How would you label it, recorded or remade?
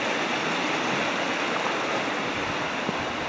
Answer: recorded